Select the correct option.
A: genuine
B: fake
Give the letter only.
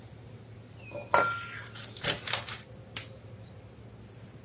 A